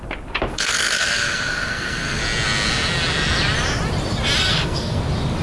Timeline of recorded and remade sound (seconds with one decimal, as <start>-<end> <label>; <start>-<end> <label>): 0.0-0.5 recorded; 0.5-2.2 remade; 2.2-4.4 recorded; 4.4-5.0 remade; 5.0-5.4 recorded